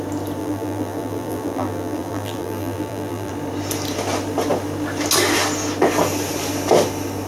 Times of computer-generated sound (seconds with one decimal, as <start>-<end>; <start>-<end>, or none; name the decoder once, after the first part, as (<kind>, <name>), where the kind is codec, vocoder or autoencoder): 0.4-3.3 (vocoder, BigVGAN v2)